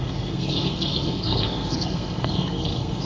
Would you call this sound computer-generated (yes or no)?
yes